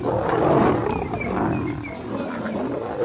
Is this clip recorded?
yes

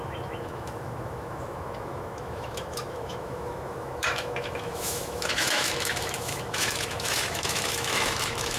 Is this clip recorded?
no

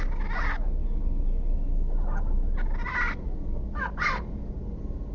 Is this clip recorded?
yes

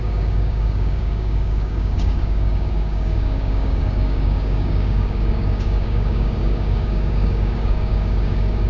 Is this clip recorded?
no